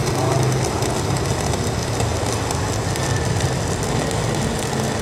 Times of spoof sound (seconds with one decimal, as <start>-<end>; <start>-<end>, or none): none